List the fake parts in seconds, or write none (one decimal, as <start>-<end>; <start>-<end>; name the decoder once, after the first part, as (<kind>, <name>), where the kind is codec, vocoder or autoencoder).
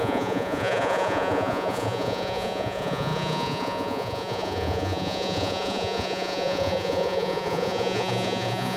0.0-8.8 (vocoder, Vocos)